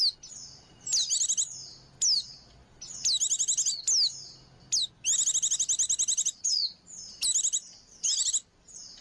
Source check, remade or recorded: recorded